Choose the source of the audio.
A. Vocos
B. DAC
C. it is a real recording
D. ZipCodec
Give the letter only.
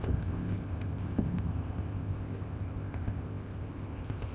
D